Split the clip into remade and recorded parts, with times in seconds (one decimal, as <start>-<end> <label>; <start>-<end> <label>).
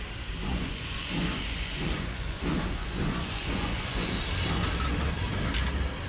0.0-0.5 recorded; 0.5-4.2 remade; 4.2-6.1 recorded